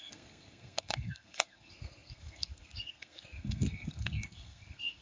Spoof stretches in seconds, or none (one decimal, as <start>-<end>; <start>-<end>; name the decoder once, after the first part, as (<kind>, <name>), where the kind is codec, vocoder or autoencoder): 0.0-5.0 (codec, SNAC)